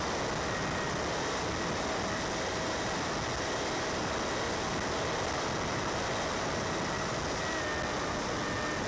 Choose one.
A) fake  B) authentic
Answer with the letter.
B